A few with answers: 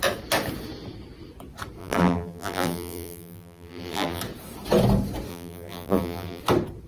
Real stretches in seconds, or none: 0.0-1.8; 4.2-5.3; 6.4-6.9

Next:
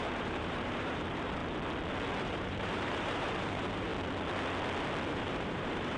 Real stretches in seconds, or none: 1.4-2.2; 3.9-5.1

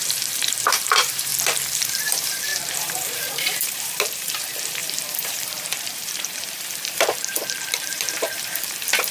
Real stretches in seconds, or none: 1.3-1.8